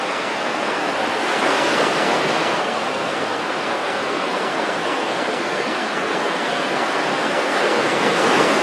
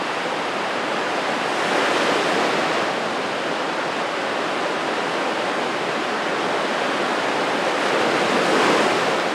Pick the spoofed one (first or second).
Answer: first